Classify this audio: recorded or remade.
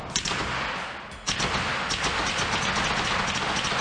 recorded